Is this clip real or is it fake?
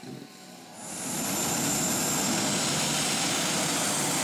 real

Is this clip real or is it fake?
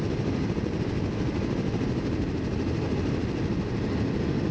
real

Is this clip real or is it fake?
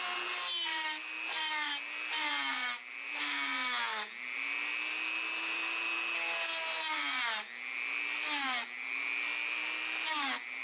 real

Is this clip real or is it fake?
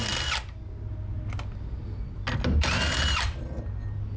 real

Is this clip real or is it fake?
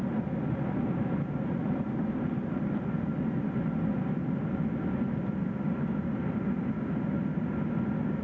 real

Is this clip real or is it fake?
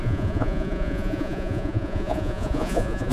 fake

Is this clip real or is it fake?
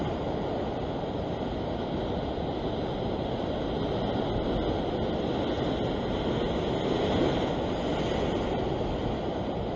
real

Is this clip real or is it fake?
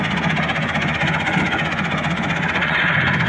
fake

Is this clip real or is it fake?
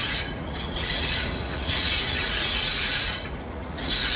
fake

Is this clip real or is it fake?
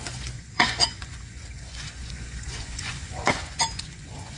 fake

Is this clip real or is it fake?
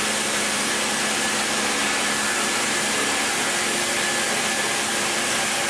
real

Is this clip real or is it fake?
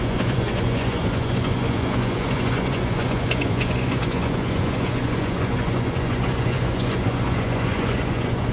fake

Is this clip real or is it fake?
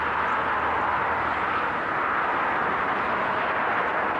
real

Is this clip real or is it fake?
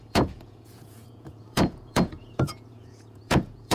fake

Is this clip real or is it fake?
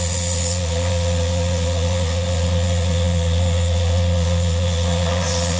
fake